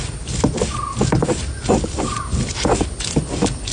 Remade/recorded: recorded